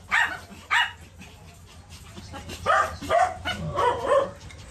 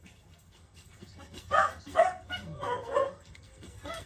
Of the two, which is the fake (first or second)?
second